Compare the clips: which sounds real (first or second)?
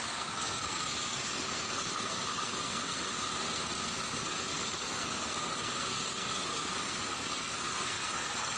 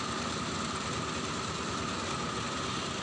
second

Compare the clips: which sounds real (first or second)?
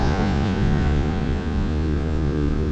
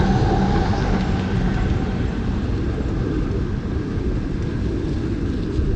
second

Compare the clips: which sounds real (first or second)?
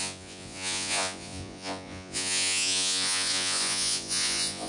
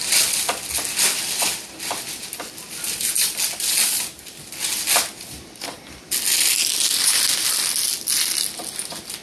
second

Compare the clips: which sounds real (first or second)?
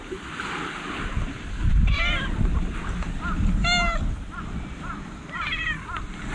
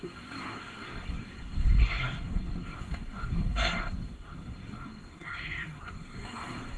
first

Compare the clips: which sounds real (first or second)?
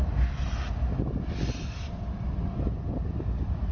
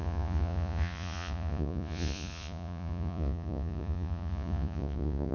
first